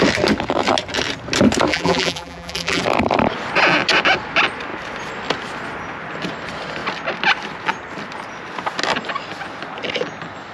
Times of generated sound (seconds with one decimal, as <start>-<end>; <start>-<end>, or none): 1.7-2.8